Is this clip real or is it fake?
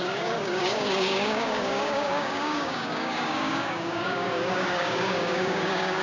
fake